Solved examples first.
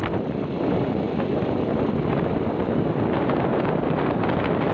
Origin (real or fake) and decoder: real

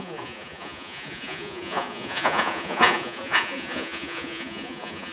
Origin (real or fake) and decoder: fake, vocoder, Vocos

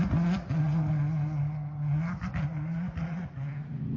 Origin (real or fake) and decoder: real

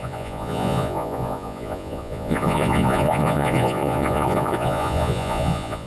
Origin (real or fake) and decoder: fake, vocoder, Vocos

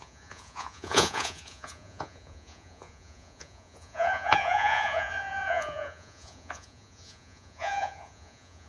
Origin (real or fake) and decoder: fake, vocoder, Vocos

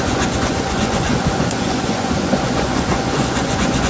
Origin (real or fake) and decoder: fake, vocoder, Vocos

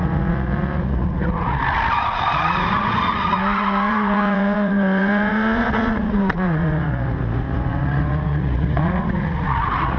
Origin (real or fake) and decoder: fake, vocoder, Vocos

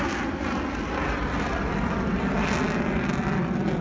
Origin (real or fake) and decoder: real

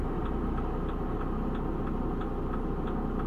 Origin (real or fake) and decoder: real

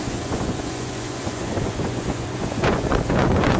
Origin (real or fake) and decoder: fake, vocoder, Vocos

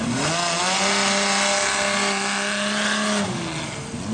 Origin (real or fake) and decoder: real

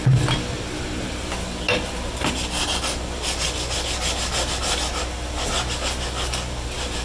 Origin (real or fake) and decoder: real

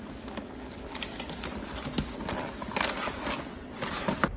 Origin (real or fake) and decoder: real